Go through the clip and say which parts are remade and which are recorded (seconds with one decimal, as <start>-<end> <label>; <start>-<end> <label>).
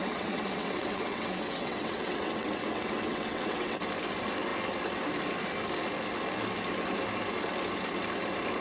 0.0-3.8 remade; 3.8-8.6 recorded